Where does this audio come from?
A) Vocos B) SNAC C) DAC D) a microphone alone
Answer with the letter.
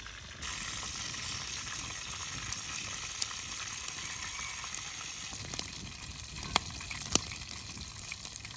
D